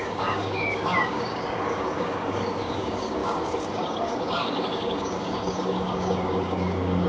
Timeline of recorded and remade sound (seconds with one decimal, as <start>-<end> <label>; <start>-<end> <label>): 0.0-7.1 remade